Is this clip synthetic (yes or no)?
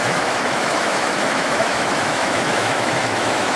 yes